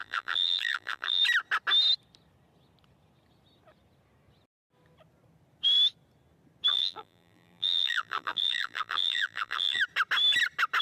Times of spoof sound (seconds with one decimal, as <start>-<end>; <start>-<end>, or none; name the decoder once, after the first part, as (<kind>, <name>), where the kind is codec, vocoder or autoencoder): 0.0-1.2 (vocoder, BigVGAN v2); 6.7-9.8